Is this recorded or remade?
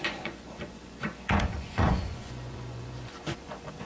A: remade